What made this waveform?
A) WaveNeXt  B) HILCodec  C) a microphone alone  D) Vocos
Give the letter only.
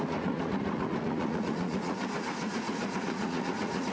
D